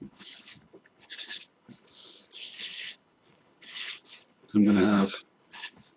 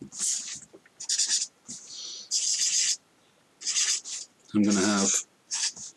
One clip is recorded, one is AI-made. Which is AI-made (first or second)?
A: first